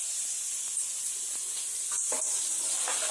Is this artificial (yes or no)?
no